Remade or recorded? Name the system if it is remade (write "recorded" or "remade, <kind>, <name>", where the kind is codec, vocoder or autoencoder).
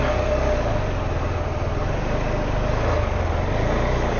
recorded